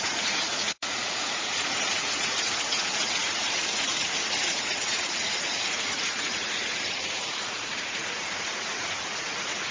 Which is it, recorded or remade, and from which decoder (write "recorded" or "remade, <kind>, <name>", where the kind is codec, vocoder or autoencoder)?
remade, vocoder, Vocos